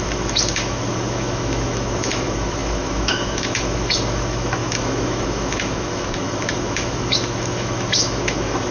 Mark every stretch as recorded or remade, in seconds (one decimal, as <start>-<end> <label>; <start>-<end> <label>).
0.0-8.7 remade